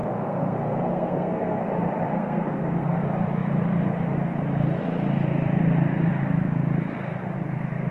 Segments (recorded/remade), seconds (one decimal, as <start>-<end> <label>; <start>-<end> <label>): 0.0-1.6 remade; 1.6-2.1 recorded; 2.1-3.0 remade; 3.0-7.9 recorded